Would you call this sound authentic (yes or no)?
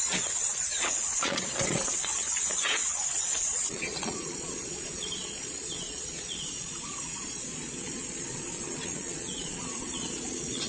no